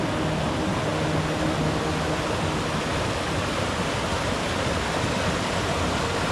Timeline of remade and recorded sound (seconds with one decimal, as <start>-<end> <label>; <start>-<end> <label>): 0.0-6.3 recorded